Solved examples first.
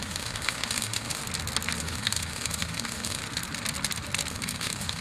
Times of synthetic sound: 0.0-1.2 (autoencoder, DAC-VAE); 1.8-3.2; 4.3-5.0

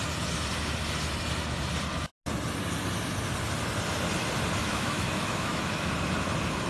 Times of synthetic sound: 4.6-5.9 (autoencoder, DAC-VAE)